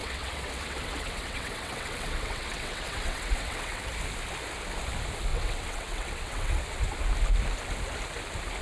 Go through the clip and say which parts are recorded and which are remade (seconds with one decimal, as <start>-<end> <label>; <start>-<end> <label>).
0.0-3.9 remade; 3.9-5.3 recorded; 5.3-6.6 remade; 6.6-8.6 recorded

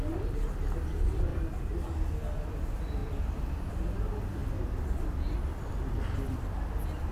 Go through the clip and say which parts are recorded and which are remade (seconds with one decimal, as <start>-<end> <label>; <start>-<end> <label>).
0.0-1.3 recorded; 1.3-2.5 remade; 2.5-4.4 recorded; 4.4-5.7 remade; 5.7-7.1 recorded